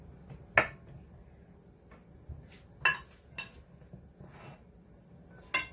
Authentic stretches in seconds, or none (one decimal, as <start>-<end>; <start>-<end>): 0.0-5.7